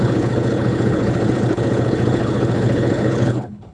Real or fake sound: fake